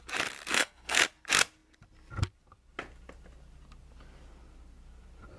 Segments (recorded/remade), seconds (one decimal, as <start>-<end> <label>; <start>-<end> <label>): 0.0-0.5 recorded; 0.5-1.0 remade; 1.0-5.4 recorded